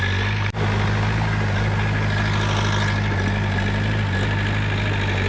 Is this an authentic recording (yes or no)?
yes